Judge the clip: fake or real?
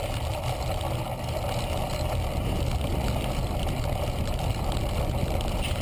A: real